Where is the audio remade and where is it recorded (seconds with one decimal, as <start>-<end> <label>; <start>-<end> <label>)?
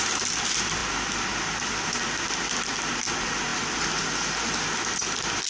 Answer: 0.0-3.5 recorded; 3.5-4.5 remade; 4.5-5.5 recorded